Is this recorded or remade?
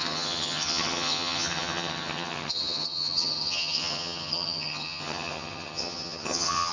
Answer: remade